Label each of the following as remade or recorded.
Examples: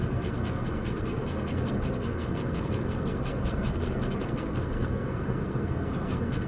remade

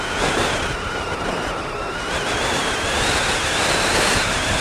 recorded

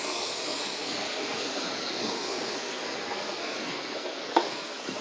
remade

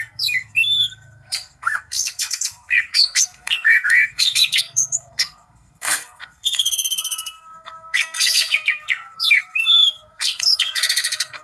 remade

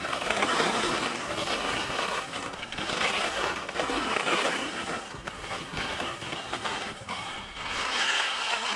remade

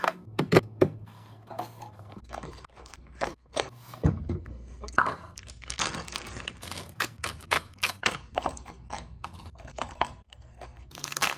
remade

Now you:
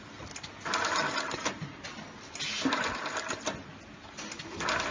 recorded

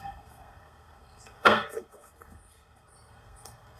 remade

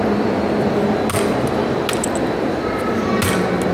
recorded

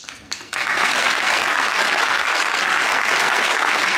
remade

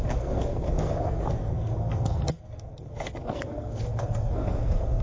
remade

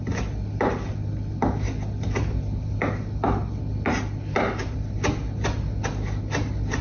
recorded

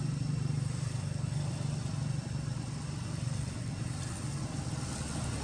recorded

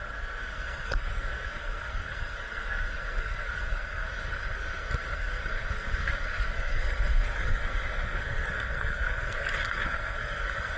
remade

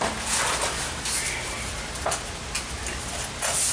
recorded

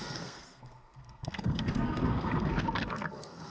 remade